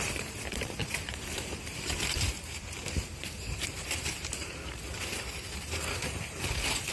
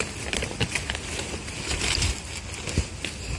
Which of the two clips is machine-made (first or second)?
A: first